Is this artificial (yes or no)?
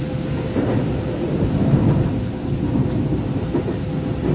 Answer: no